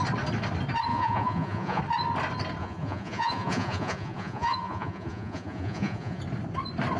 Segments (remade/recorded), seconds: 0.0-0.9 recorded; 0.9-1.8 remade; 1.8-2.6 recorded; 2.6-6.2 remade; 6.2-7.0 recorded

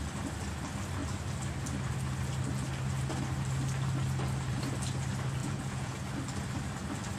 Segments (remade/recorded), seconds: 0.0-5.4 recorded; 5.4-6.0 remade; 6.0-7.2 recorded

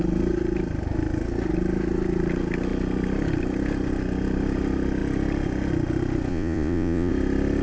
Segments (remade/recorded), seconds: 0.0-6.3 recorded; 6.3-7.1 remade; 7.1-7.6 recorded

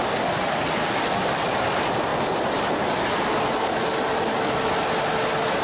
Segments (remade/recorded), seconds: 0.0-5.6 recorded

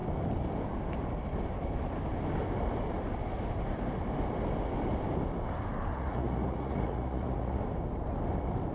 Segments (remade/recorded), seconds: 0.0-5.9 recorded; 5.9-7.6 remade; 7.6-8.7 recorded

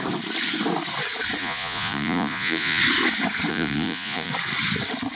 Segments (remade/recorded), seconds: 0.0-1.4 recorded; 1.4-2.8 remade; 2.8-3.5 recorded; 3.5-4.3 remade; 4.3-5.2 recorded

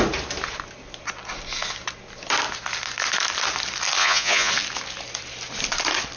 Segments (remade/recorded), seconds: 0.0-4.0 recorded; 4.0-4.5 remade; 4.5-6.2 recorded